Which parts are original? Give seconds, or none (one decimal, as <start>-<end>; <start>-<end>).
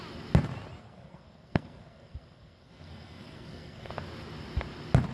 0.0-0.8; 3.9-5.1